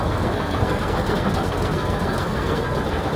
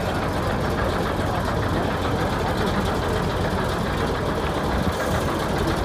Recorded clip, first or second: second